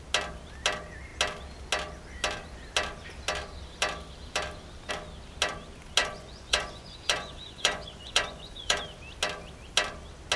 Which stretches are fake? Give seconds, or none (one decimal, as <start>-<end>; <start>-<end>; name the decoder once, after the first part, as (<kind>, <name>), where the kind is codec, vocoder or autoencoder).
6.0-8.8 (vocoder, Vocos)